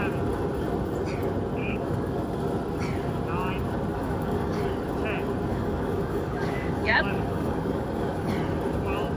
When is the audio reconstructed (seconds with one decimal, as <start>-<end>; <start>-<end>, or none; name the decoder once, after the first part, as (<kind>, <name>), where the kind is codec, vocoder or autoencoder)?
1.6-2.2 (codec, DAC); 3.9-4.6; 5.5-8.3